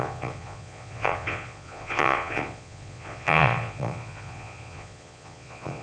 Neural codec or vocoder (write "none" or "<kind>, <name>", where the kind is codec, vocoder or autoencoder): vocoder, Vocos